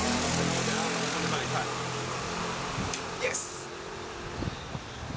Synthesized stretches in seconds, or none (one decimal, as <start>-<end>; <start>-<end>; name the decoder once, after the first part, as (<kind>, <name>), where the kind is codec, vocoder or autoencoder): none